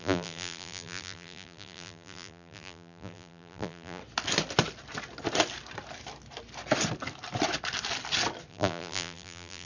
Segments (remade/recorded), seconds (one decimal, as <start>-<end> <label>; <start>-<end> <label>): 0.0-4.0 remade; 4.0-8.5 recorded; 8.5-9.7 remade